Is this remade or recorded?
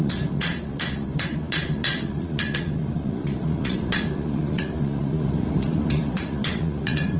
remade